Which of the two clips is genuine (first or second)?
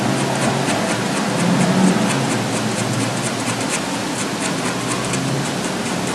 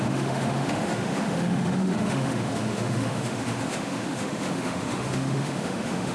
first